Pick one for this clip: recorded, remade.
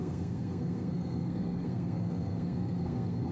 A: remade